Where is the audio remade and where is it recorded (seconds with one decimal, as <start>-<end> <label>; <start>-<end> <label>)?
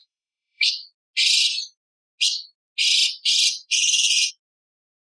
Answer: 0.0-0.7 remade; 0.7-5.2 recorded